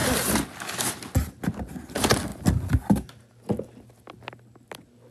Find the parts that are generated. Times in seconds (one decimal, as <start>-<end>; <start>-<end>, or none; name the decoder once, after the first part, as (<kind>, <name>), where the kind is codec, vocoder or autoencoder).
none